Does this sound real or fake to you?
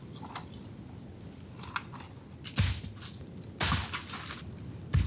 real